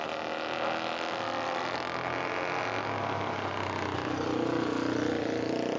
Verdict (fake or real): real